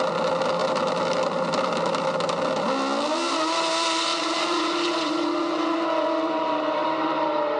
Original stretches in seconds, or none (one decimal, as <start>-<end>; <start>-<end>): 0.0-4.1